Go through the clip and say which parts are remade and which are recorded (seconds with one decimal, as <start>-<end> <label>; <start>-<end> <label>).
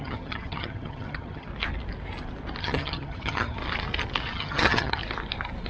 0.0-1.5 remade; 1.5-2.6 recorded; 2.6-3.6 remade; 3.6-4.3 recorded; 4.3-5.0 remade; 5.0-5.7 recorded